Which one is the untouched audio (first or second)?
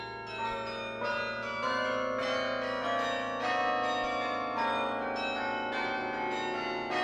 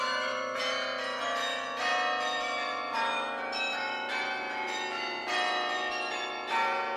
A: first